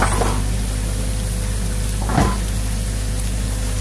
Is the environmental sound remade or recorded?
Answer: recorded